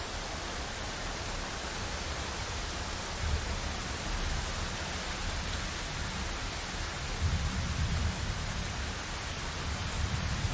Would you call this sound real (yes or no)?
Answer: yes